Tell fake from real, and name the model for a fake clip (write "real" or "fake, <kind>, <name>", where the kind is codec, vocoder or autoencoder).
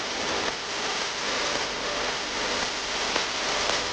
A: real